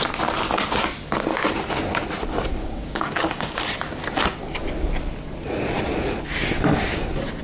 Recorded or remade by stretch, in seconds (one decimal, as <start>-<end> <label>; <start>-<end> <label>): 0.0-2.6 recorded; 2.6-3.6 remade; 3.6-7.4 recorded